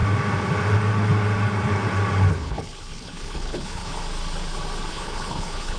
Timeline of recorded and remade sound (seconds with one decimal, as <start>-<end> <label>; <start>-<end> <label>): 0.0-2.3 recorded; 2.3-3.9 remade; 3.9-4.9 recorded; 4.9-5.8 remade